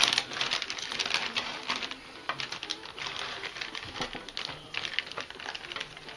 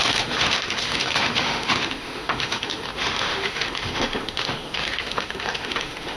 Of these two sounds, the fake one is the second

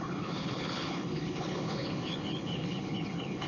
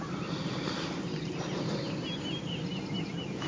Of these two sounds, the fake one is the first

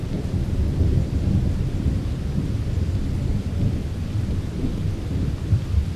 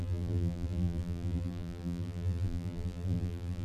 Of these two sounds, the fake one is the second